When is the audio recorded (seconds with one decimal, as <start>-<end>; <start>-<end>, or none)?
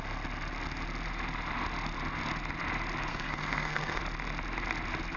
0.0-3.1; 4.0-5.2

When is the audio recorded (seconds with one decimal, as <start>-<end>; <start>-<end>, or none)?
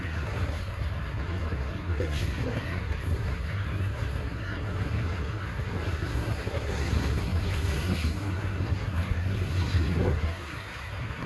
none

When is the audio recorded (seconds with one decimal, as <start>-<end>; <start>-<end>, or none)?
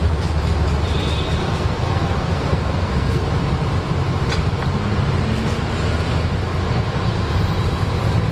0.0-1.4; 3.2-8.3